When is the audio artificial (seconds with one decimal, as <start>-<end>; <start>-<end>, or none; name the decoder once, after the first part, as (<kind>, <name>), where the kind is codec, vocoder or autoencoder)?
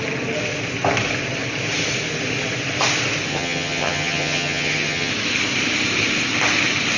3.3-5.1 (vocoder, HiFi-GAN)